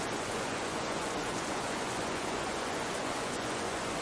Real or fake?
fake